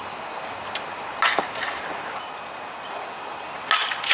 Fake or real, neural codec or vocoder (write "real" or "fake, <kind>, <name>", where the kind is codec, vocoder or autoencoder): real